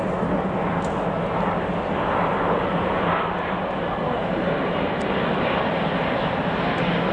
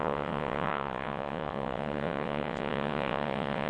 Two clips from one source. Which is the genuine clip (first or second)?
first